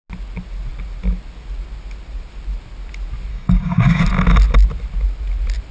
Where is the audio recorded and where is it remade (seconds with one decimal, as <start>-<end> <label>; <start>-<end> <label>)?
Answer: 0.0-3.3 recorded; 3.3-4.0 remade; 4.0-5.7 recorded